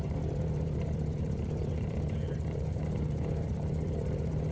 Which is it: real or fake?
fake